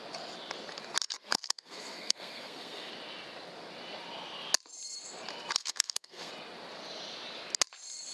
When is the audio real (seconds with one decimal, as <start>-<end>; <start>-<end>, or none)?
0.0-1.2; 2.9-5.6; 6.3-8.1